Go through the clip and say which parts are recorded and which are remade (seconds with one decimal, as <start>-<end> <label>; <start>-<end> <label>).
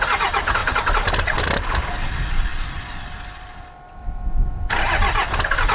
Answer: 0.0-2.5 recorded; 2.5-4.9 remade; 4.9-5.7 recorded